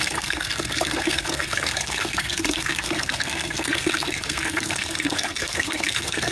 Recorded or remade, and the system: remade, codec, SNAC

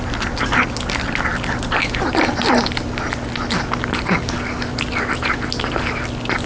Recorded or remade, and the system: recorded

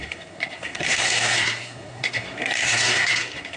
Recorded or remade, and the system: remade, codec, SNAC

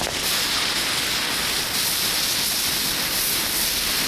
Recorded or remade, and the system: recorded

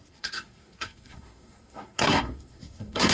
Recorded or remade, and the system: remade, codec, SNAC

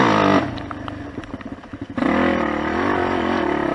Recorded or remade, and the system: recorded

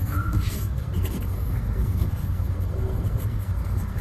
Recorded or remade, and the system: remade, codec, SNAC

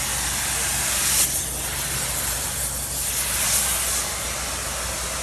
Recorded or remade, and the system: recorded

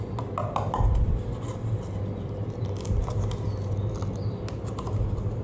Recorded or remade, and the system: recorded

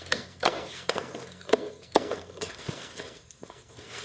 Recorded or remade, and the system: remade, codec, SNAC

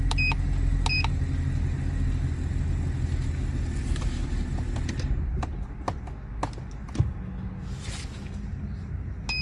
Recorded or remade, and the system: recorded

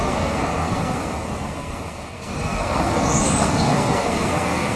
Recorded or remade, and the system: remade, codec, SNAC